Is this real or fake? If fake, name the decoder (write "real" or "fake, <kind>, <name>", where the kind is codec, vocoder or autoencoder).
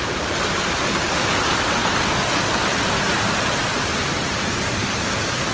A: real